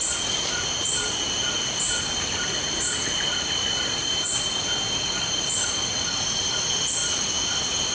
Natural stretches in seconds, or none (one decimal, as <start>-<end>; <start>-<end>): 0.0-7.9

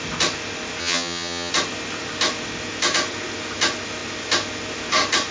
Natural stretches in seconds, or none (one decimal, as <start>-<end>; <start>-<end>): 0.0-0.8; 1.5-5.3

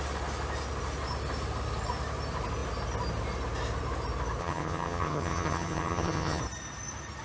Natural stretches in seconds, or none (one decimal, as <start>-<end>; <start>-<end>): 0.0-4.4; 6.4-7.2

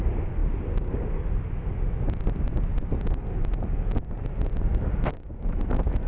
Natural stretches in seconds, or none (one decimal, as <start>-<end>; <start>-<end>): 0.0-6.1

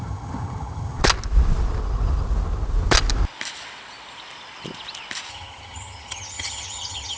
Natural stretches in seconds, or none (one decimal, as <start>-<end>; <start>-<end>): 1.0-5.3